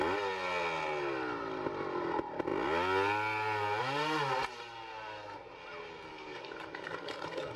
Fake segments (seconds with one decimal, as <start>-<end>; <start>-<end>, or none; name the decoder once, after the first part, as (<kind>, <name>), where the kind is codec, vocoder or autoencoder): 6.1-7.6 (codec, DAC)